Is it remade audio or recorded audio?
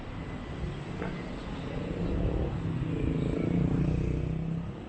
recorded